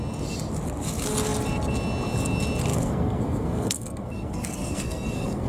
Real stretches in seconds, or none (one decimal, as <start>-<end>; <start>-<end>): 0.0-2.7